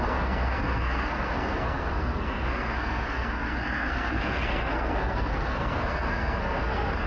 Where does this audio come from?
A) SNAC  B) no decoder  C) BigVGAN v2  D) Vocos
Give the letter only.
A